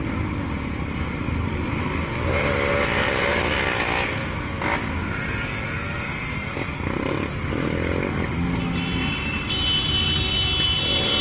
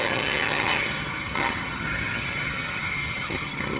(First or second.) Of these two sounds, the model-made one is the second